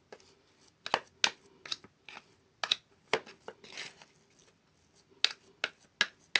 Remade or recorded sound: recorded